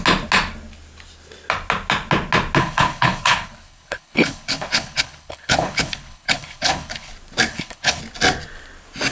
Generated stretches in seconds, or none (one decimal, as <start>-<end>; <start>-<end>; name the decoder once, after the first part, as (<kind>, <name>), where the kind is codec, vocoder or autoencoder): 2.6-7.1 (codec, HILCodec); 7.5-8.0